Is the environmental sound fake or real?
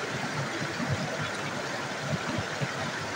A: real